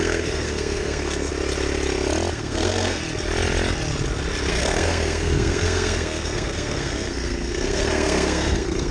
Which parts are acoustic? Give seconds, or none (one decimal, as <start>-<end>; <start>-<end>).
1.3-2.3; 3.0-4.5